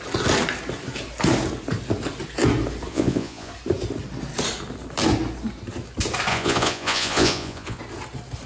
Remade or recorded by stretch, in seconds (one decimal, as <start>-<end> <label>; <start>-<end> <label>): 0.0-2.9 recorded; 2.9-3.5 remade; 3.5-6.3 recorded; 6.3-7.8 remade; 7.8-8.5 recorded